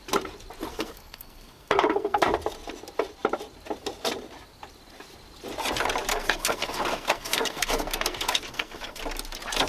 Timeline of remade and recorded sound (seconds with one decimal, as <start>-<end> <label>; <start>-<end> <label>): 0.0-0.7 recorded; 0.7-2.2 remade; 2.2-6.1 recorded; 6.1-9.0 remade; 9.0-9.7 recorded